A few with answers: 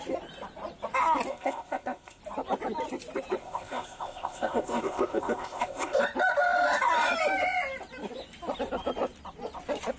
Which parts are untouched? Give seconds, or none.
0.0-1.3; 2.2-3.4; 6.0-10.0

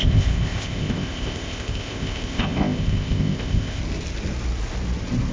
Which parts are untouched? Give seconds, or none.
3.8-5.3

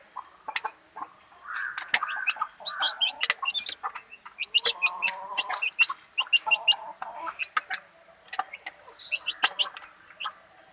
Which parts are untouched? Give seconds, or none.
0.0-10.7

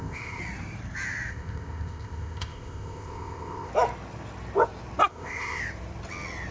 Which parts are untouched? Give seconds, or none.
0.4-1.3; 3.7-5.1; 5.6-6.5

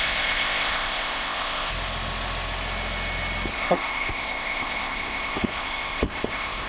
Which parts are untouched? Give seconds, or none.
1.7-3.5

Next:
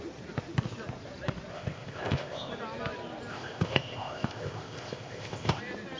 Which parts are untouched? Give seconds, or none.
0.0-1.5; 2.5-3.3; 5.6-6.0

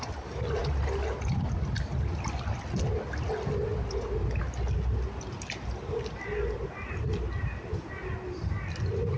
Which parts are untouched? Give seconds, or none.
0.0-9.2